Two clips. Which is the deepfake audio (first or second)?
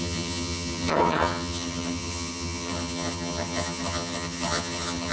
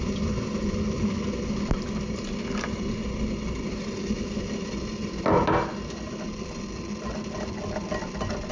first